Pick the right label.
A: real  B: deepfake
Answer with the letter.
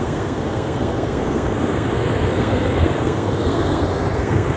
B